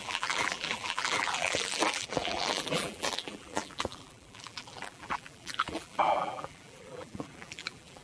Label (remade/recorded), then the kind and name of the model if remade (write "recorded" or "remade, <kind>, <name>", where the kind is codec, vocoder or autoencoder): remade, vocoder, BigVGAN v2